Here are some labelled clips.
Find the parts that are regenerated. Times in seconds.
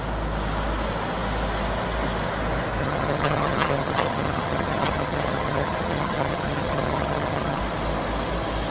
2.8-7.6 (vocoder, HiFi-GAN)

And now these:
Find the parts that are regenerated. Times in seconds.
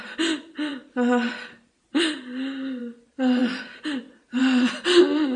none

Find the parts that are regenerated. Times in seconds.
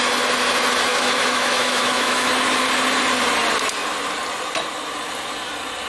0.9-2.3 (autoencoder, DAC-VAE)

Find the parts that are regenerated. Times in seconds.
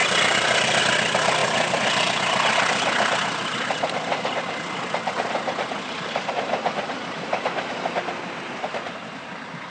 0.0-0.8 (vocoder, BigVGAN v2); 1.4-6.3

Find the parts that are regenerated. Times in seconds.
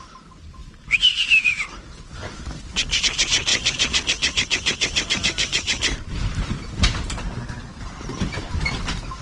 0.6-3.0 (vocoder, BigVGAN v2); 3.5-7.3; 8.1-8.7